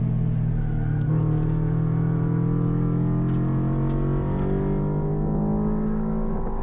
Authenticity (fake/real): real